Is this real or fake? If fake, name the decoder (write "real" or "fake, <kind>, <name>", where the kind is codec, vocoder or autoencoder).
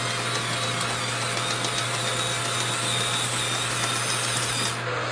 real